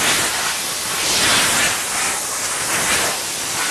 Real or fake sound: real